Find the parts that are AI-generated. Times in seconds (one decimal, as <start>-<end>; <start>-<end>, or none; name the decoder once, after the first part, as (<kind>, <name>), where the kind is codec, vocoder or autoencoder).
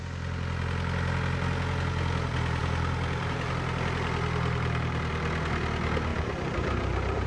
2.6-3.5 (vocoder, BigVGAN v2); 6.1-7.3